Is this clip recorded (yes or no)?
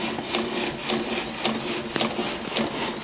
yes